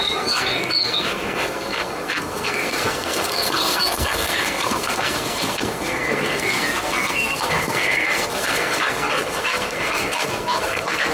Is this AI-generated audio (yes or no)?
yes